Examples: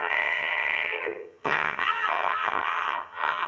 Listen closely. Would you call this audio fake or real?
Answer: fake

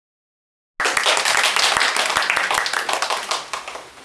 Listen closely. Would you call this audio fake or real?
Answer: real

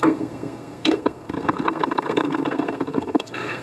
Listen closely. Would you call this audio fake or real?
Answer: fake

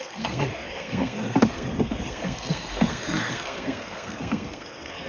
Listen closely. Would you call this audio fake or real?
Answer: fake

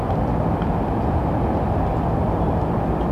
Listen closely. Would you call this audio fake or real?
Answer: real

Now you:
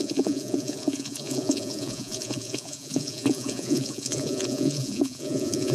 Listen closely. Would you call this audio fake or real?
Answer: fake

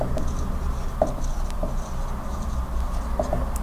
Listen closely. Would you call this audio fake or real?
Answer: real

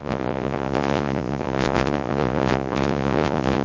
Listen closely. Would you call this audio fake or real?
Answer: fake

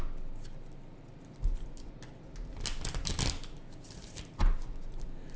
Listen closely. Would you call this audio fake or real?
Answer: real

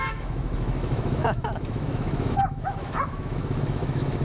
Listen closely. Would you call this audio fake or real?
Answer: fake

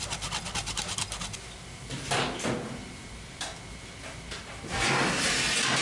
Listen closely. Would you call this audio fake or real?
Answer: real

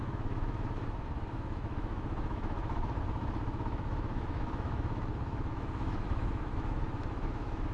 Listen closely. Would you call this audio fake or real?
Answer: fake